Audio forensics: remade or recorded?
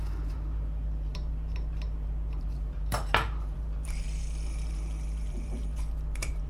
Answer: remade